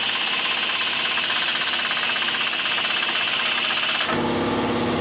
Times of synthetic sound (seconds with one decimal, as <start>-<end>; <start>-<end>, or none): none